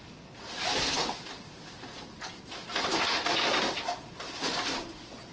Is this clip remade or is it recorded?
recorded